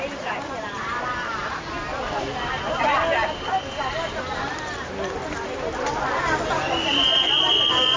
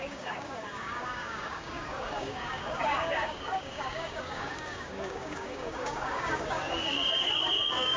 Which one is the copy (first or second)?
second